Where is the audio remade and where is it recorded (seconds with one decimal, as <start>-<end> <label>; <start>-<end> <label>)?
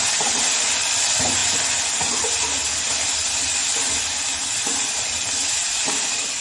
0.0-1.4 remade; 1.4-2.2 recorded; 2.2-3.6 remade; 3.6-5.0 recorded; 5.0-6.4 remade